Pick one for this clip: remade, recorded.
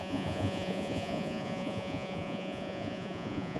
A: remade